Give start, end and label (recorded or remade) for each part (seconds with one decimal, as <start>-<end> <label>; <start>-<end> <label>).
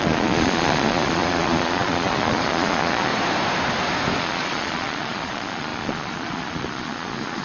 0.0-3.1 remade; 3.1-4.2 recorded; 4.2-7.4 remade